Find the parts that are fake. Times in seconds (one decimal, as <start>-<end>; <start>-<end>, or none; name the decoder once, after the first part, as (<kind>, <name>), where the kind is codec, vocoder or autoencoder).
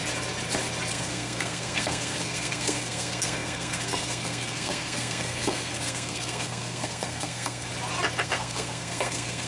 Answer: 0.9-7.7 (codec, SNAC); 8.2-9.5